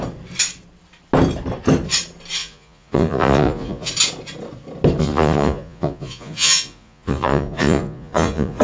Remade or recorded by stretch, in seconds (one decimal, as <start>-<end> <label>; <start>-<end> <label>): 0.0-2.4 recorded; 2.4-3.9 remade; 3.9-5.0 recorded; 5.0-8.6 remade